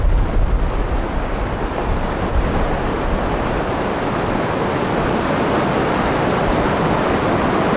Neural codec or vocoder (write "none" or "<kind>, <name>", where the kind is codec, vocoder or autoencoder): none